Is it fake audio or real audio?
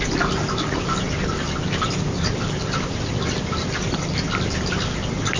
real